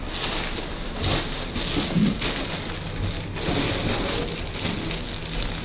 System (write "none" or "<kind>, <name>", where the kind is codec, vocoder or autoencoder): none